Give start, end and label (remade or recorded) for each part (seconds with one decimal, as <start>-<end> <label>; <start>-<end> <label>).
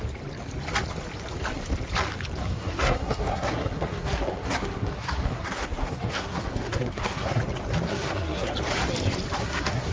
0.0-2.4 recorded; 2.4-7.4 remade; 7.4-7.9 recorded; 7.9-8.5 remade; 8.5-9.4 recorded; 9.4-9.9 remade